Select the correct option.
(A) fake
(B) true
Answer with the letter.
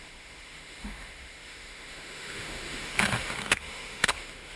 A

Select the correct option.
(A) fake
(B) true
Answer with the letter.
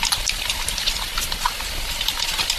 B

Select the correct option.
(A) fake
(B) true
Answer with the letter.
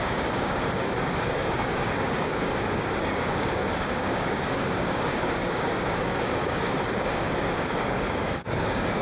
A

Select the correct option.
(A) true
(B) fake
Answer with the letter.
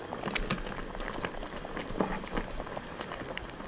A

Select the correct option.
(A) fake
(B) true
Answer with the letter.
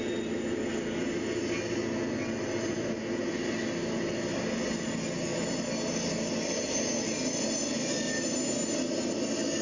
B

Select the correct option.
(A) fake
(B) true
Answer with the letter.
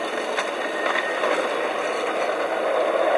B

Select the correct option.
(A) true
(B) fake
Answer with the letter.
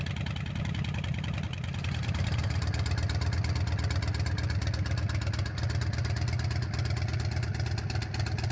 A